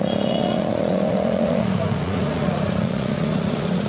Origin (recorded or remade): remade